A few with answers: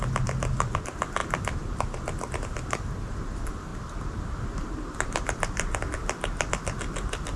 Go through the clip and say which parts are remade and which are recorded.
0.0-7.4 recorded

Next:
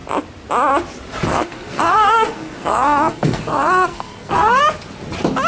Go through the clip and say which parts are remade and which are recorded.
0.0-1.3 recorded; 1.3-4.6 remade; 4.6-5.5 recorded

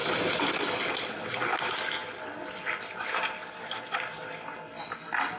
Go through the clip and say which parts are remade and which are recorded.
0.0-5.4 recorded

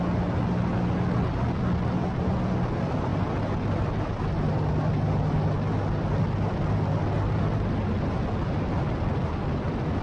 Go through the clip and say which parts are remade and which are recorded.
0.0-10.0 recorded

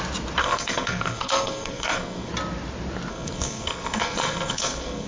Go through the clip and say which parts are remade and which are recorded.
0.0-0.4 recorded; 0.4-2.3 remade; 2.3-3.1 recorded; 3.1-5.1 remade

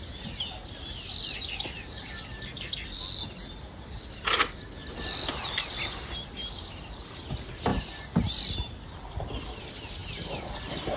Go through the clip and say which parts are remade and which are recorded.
0.0-11.0 recorded